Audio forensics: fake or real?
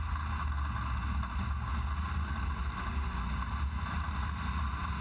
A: real